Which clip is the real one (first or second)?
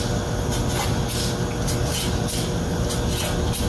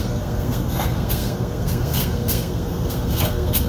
first